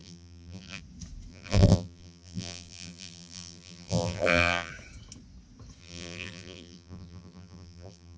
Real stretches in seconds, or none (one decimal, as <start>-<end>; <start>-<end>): 0.8-1.3; 4.7-5.8